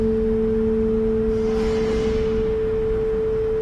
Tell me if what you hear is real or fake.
real